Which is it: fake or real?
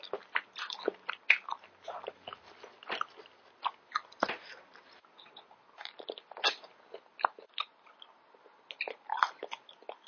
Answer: real